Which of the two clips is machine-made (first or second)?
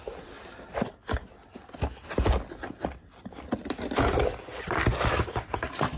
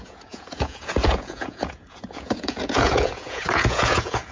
second